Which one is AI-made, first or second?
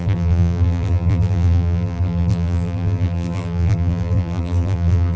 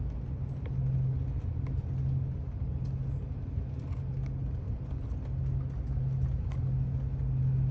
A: first